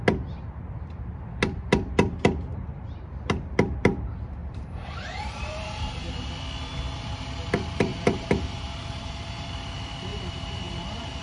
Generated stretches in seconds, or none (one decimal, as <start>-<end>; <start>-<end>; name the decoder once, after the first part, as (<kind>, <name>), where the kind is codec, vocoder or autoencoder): 2.5-3.1 (vocoder, BigVGAN v2); 4.4-6.3; 7.9-9.5; 10.1-11.2

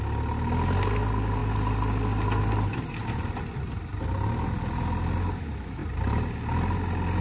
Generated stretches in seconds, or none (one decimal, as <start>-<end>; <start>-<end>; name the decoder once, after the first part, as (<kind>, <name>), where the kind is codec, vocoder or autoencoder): 5.8-6.5 (vocoder, BigVGAN v2)

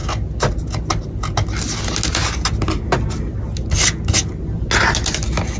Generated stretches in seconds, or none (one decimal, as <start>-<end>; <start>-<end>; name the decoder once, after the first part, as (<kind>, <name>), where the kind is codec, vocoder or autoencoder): none